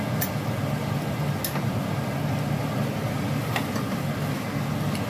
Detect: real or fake real